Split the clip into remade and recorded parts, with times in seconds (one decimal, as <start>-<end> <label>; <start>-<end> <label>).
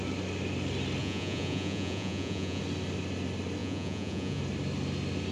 0.0-1.0 recorded; 1.0-2.6 remade; 2.6-3.6 recorded; 3.6-4.4 remade; 4.4-5.3 recorded